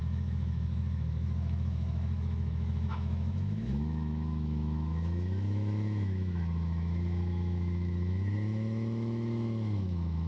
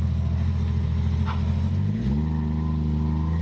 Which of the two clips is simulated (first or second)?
first